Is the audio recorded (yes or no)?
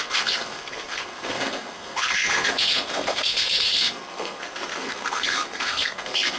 no